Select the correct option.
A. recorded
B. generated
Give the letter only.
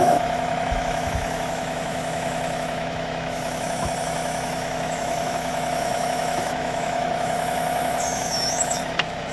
B